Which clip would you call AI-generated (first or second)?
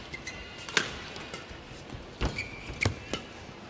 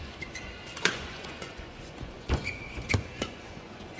second